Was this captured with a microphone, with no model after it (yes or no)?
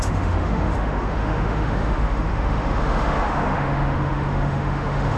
no